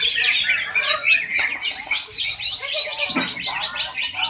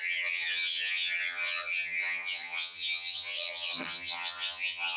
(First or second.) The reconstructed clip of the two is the second